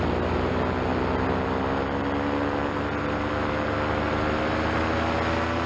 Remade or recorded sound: recorded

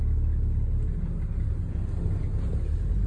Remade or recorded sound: recorded